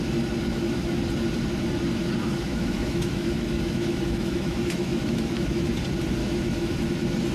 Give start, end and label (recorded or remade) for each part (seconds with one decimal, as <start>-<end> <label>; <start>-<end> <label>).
0.0-0.5 recorded; 0.5-1.0 remade; 1.0-2.2 recorded; 2.2-5.7 remade; 5.7-6.2 recorded; 6.2-6.7 remade; 6.7-7.3 recorded

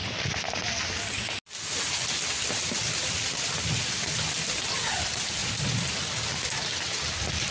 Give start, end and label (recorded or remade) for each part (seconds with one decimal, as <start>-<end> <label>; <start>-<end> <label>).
0.0-7.5 recorded

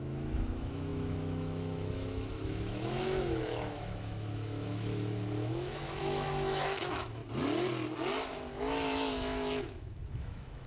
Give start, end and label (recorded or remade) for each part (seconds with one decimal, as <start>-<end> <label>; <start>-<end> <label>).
0.0-7.2 remade; 7.2-8.6 recorded; 8.6-10.7 remade

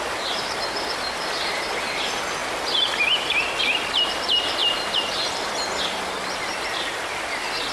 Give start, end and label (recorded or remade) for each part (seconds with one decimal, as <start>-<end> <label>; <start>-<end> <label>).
0.0-4.6 recorded; 4.6-5.5 remade; 5.5-7.7 recorded

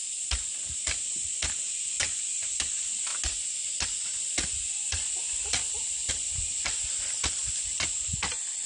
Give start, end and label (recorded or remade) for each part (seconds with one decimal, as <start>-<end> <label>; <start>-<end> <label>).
0.0-8.7 recorded

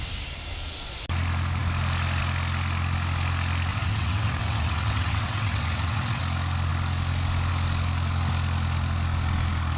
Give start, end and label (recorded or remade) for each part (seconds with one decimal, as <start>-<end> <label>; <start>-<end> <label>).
0.0-3.7 recorded; 3.7-6.2 remade; 6.2-9.8 recorded